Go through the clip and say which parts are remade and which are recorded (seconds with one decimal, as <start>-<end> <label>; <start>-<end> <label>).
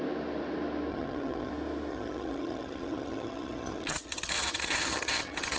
0.0-0.9 recorded; 0.9-1.5 remade; 1.5-1.9 recorded; 1.9-5.6 remade